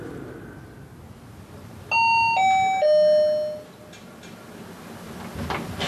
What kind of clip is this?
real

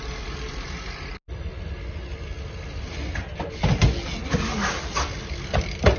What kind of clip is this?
real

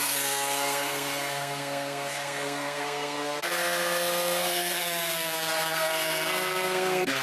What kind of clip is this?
fake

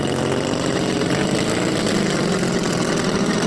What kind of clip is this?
real